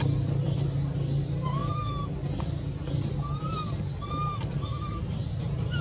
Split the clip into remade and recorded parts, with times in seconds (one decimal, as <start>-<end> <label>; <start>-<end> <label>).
0.0-5.8 recorded